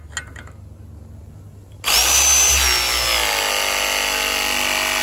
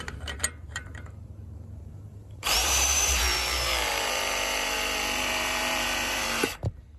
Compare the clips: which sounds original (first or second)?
first